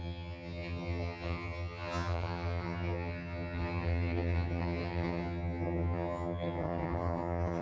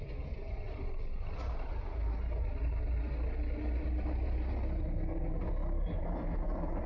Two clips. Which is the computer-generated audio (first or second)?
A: first